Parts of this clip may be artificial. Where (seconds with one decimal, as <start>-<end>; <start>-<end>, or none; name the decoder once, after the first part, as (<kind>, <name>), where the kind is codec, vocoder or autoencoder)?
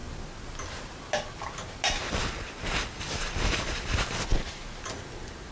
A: none